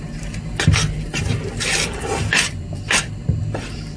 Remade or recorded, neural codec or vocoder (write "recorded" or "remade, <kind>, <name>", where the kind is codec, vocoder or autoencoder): remade, vocoder, BigVGAN v2